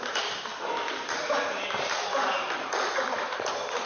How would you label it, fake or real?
fake